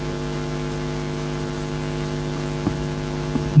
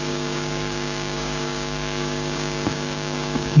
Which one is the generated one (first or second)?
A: second